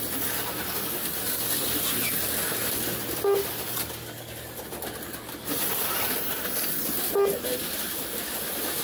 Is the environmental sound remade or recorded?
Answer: recorded